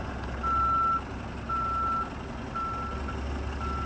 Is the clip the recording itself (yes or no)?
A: yes